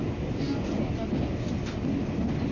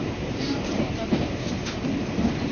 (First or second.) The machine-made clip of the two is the second